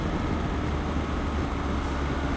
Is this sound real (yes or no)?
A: yes